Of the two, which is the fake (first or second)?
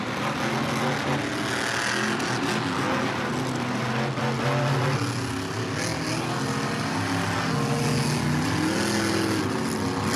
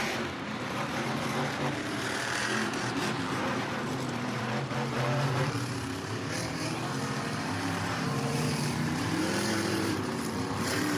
second